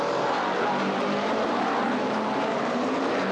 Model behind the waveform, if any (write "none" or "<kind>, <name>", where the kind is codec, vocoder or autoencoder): vocoder, BigVGAN v2